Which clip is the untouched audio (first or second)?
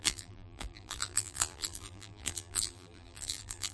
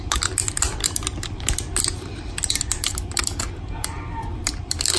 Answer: second